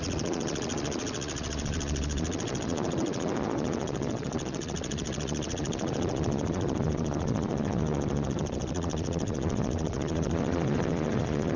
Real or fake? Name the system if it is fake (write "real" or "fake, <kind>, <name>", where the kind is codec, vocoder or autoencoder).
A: fake, vocoder, Vocos